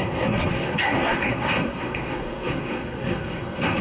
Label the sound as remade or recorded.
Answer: remade